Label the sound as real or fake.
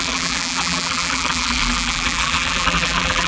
fake